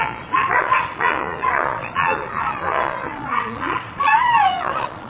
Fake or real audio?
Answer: fake